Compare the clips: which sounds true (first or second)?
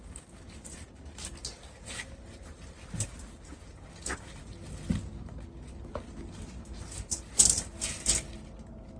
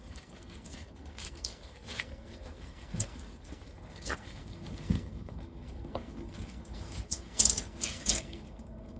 first